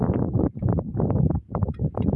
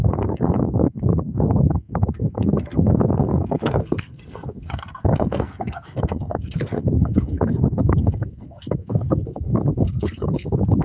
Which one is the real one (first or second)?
first